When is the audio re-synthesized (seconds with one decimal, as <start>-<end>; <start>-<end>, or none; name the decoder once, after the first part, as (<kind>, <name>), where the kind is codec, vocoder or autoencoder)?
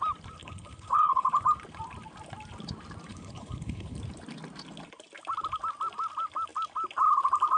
0.4-1.3 (codec, HILCodec); 3.1-4.0